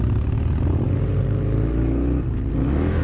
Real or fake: real